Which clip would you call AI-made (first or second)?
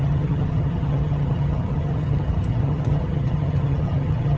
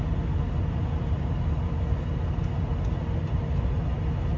first